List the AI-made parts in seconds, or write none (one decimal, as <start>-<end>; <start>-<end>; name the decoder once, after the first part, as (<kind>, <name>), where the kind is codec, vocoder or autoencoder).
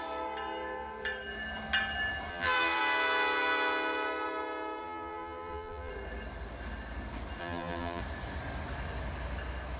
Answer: 2.3-2.8 (vocoder, BigVGAN v2); 4.8-5.9; 7.4-8.0